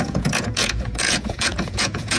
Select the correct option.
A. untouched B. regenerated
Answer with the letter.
B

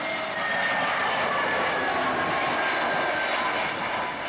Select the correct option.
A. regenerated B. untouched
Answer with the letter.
B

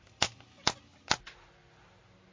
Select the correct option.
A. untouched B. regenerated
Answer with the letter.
B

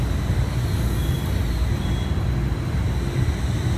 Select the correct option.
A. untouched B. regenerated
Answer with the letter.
A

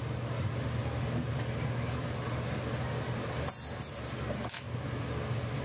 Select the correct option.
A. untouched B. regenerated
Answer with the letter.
A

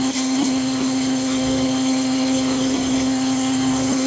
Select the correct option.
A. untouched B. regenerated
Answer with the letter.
B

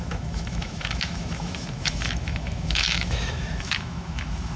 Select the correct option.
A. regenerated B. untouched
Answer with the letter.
A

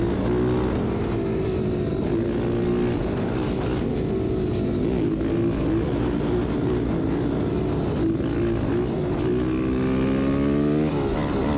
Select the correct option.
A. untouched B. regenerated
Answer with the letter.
A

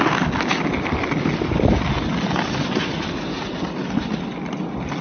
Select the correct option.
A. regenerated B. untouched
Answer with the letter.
B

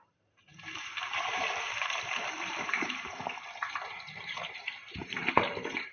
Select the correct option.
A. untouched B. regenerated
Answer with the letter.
B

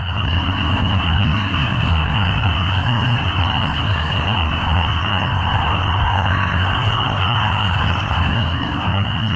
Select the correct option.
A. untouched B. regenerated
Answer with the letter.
B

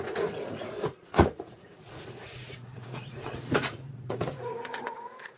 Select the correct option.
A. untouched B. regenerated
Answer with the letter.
B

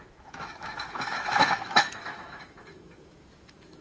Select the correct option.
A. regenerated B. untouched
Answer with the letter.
A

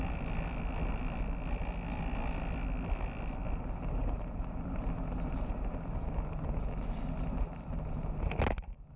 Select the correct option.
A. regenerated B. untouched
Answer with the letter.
B